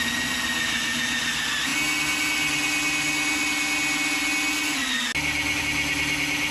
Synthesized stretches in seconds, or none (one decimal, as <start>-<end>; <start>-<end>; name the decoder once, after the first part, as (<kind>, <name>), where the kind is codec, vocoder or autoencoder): none